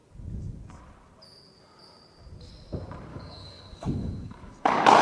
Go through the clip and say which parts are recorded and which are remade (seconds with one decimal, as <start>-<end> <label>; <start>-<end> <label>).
0.0-3.1 recorded; 3.1-5.0 remade